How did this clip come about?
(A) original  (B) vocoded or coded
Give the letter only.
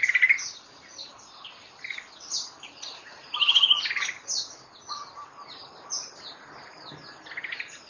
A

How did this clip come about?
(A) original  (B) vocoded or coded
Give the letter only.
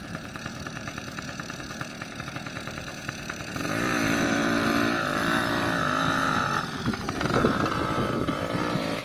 B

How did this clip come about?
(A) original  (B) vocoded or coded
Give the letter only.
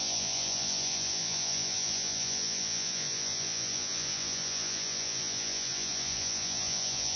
B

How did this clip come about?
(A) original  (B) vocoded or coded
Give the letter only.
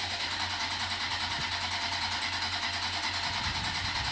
A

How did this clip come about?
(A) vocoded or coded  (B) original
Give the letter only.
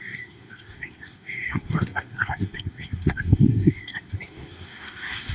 A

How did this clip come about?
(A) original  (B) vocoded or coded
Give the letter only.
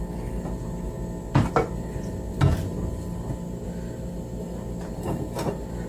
A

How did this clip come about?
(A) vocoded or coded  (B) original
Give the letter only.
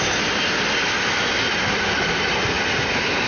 B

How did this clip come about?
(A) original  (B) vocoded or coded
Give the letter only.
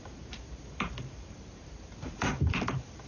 B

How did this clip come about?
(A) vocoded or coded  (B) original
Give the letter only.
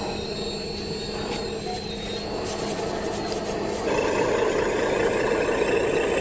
B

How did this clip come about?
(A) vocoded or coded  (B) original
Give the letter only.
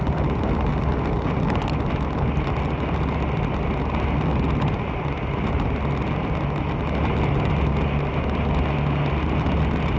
B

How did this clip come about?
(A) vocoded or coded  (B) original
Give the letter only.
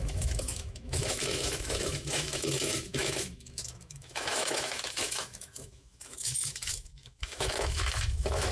A